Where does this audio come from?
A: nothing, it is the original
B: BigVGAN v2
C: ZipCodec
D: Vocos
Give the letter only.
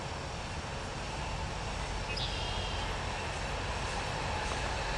A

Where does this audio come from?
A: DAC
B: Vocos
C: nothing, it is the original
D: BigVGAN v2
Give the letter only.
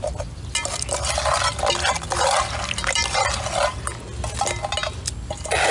C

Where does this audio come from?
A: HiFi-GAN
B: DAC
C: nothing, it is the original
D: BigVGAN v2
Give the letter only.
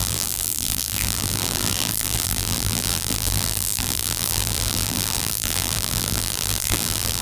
D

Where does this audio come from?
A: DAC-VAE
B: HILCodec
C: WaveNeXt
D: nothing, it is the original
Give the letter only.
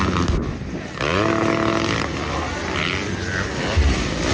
D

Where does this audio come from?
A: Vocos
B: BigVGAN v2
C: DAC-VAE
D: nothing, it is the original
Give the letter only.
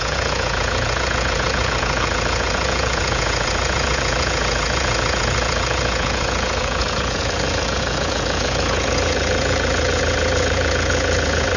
A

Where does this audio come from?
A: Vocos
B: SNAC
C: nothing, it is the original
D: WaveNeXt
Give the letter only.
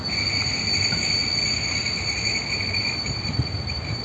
C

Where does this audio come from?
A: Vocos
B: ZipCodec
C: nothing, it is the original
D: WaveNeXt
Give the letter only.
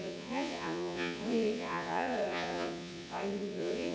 A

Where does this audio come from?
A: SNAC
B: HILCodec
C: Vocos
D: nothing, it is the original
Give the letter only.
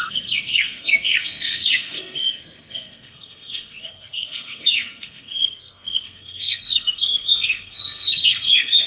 A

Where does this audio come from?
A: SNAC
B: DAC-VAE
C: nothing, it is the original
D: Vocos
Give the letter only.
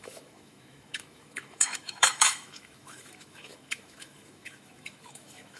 B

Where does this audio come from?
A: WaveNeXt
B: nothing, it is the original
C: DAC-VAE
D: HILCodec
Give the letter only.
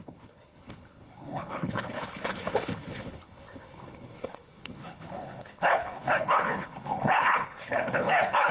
D